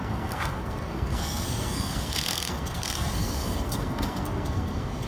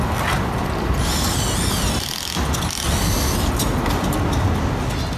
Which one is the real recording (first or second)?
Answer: second